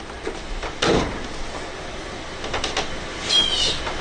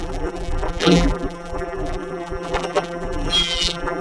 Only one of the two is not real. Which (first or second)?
second